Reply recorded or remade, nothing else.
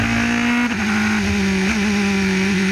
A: recorded